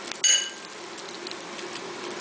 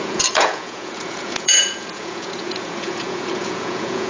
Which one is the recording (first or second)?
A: first